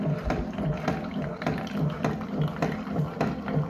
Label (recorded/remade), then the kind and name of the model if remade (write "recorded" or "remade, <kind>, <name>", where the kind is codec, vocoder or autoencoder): remade, vocoder, BigVGAN v2